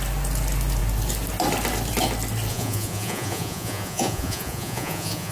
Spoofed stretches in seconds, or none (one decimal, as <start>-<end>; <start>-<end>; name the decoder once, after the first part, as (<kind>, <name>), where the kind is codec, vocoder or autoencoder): 2.5-5.3 (vocoder, Vocos)